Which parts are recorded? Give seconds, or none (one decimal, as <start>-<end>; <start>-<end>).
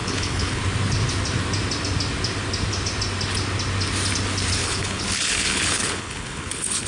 0.6-4.6